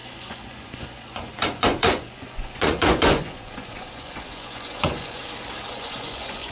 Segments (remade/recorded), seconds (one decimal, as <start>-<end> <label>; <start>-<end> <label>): 0.0-5.2 remade; 5.2-5.7 recorded; 5.7-6.5 remade